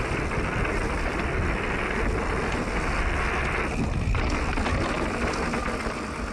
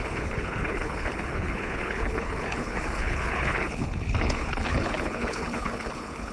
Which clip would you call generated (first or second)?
second